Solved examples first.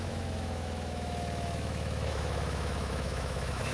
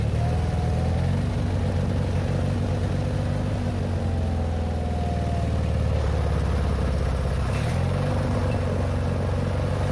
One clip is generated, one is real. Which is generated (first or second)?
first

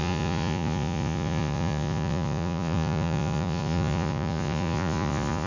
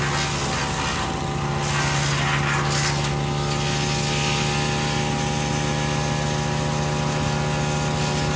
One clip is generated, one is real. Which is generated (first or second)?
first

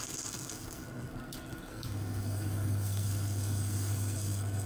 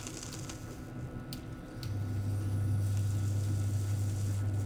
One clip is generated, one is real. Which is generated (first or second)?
first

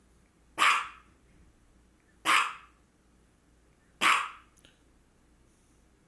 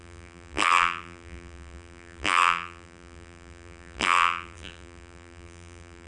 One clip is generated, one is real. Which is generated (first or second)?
second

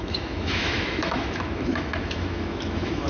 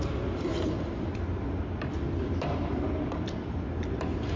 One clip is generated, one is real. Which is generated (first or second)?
first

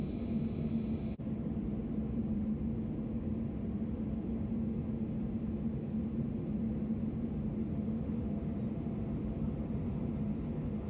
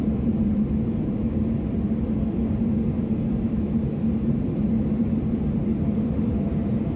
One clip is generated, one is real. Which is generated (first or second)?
second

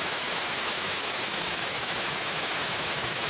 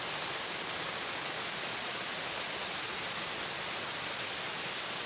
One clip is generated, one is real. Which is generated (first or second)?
first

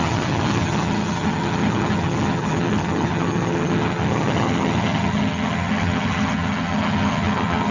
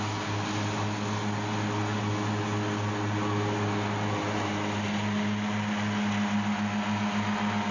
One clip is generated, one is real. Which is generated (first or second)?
first